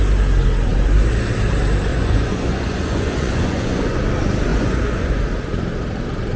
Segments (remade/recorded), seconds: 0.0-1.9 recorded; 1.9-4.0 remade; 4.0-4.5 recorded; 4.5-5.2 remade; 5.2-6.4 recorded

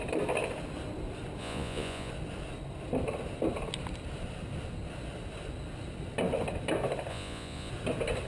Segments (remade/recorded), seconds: 0.0-1.4 recorded; 1.4-2.1 remade; 2.1-7.1 recorded; 7.1-7.7 remade; 7.7-8.3 recorded

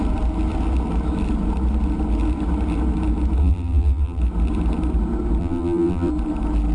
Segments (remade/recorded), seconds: 0.0-3.4 recorded; 3.4-4.2 remade; 4.2-5.4 recorded; 5.4-6.1 remade; 6.1-6.7 recorded